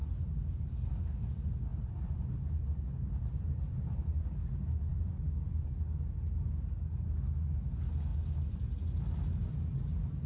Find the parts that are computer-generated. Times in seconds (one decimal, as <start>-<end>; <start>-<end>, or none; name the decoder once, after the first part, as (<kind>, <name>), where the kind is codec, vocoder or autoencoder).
0.0-1.0 (vocoder, BigVGAN v2); 1.7-5.7